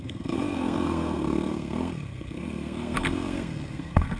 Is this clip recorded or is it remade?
remade